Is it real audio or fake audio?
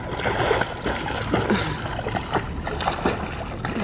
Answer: real